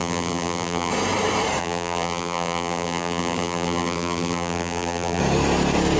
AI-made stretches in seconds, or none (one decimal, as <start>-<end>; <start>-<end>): 0.0-0.9; 1.6-5.2